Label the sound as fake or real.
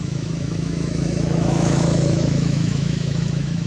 fake